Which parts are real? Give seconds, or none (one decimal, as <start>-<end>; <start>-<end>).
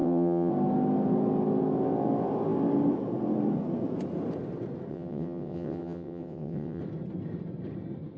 0.5-4.9; 6.8-8.2